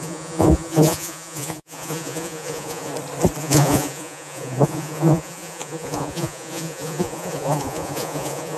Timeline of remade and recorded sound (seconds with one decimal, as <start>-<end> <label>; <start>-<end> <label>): 0.0-2.9 remade; 2.9-3.4 recorded; 3.4-8.6 remade